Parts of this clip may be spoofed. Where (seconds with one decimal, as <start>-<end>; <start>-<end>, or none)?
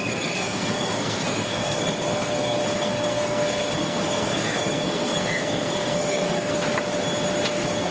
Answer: 0.0-6.6; 7.5-7.9